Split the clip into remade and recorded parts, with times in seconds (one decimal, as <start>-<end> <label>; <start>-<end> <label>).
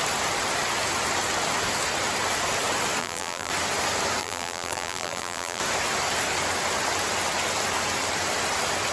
0.0-3.0 recorded; 3.0-3.5 remade; 3.5-4.2 recorded; 4.2-5.6 remade; 5.6-8.9 recorded